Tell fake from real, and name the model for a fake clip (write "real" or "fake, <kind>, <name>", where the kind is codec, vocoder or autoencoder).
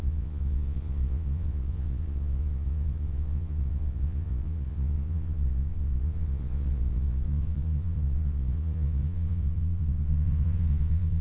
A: fake, vocoder, Vocos